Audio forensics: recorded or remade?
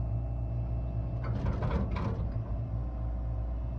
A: recorded